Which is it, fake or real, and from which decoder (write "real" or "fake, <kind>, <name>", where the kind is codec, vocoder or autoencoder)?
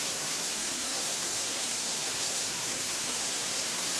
fake, codec, SNAC